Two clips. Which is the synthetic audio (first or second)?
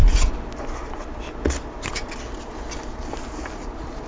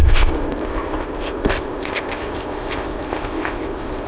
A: second